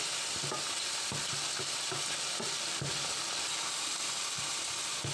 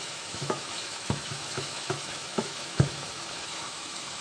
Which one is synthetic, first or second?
second